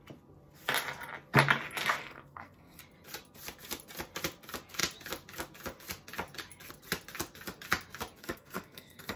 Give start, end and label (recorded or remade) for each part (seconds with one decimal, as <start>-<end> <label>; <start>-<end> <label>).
0.0-2.0 recorded; 2.0-2.8 remade; 2.8-8.2 recorded; 8.2-9.2 remade